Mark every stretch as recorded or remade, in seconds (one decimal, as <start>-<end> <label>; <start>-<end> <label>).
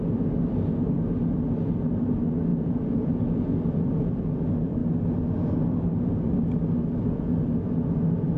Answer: 0.0-2.5 recorded; 2.5-3.6 remade; 3.6-8.4 recorded